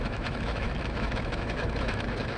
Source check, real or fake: fake